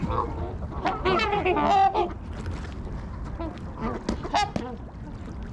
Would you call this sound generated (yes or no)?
no